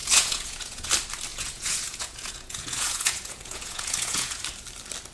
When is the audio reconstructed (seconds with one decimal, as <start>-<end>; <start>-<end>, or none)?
0.0-0.9; 1.3-4.4